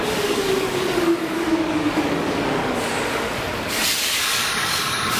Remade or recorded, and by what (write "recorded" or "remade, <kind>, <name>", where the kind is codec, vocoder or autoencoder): remade, codec, DAC